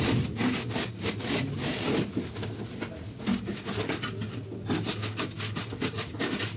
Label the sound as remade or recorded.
recorded